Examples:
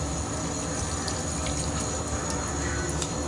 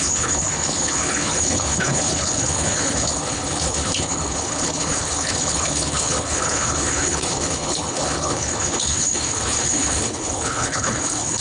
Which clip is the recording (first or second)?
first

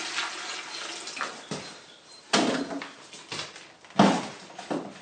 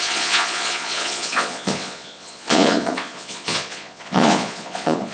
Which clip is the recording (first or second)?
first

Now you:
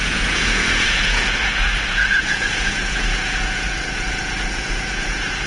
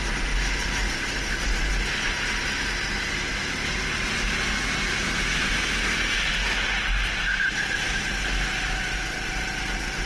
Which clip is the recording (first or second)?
second